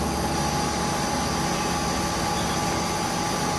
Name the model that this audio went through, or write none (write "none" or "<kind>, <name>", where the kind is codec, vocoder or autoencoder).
none